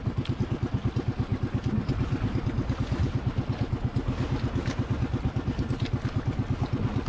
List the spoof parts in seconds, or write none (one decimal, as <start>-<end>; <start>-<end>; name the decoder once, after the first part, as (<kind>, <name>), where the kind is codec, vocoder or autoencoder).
none